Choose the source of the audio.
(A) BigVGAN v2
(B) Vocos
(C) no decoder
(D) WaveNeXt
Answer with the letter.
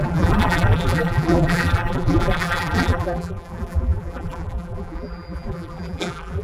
A